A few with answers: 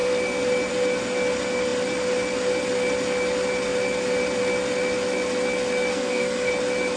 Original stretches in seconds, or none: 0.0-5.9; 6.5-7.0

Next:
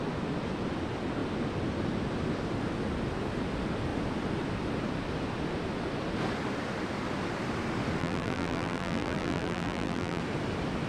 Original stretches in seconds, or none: 0.0-8.0; 10.2-10.9

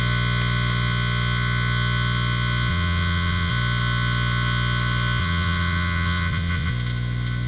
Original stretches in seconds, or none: 0.0-2.7; 3.5-5.2; 6.7-7.5

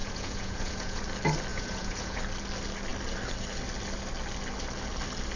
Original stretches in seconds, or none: 1.0-1.5; 2.2-5.4